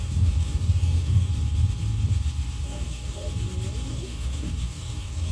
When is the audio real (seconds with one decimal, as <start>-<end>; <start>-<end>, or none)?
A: 1.3-2.6; 3.2-3.9